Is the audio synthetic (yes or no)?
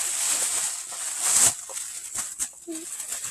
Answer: no